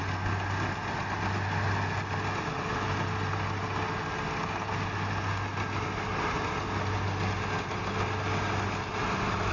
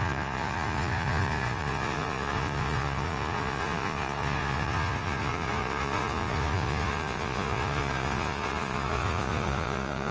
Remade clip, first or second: second